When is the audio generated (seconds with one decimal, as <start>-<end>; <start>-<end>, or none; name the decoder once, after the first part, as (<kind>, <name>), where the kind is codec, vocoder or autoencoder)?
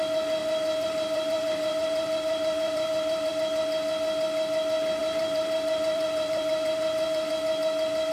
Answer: 0.4-3.3 (vocoder, BigVGAN v2); 5.0-7.3